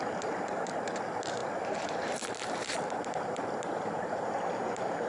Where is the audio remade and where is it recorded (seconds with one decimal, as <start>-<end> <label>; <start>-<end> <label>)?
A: 0.0-1.4 recorded; 1.4-3.8 remade; 3.8-5.1 recorded